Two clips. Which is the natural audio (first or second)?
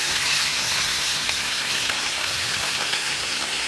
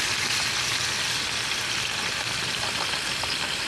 second